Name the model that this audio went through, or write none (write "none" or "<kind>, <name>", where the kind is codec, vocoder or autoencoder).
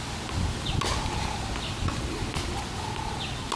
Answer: none